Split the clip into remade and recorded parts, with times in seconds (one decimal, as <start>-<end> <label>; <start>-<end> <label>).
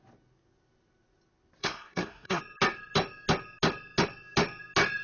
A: 0.0-1.6 recorded; 1.6-2.4 remade; 2.4-5.0 recorded